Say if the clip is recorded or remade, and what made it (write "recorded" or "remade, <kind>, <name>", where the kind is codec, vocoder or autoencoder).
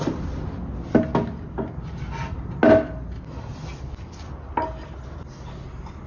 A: recorded